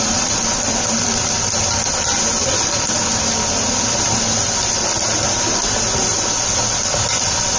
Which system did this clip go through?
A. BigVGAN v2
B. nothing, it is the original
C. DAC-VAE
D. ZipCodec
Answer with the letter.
B